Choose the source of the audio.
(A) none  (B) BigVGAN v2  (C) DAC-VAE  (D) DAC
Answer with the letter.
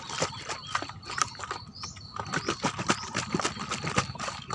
B